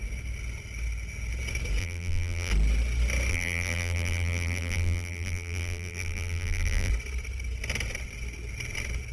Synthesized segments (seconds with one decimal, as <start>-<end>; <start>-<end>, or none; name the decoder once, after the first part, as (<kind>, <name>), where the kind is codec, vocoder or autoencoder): 1.8-2.5 (vocoder, BigVGAN v2); 3.3-6.9